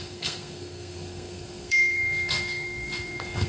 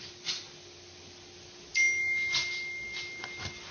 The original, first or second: second